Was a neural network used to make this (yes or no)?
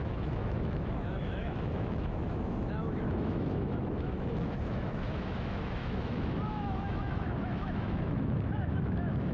yes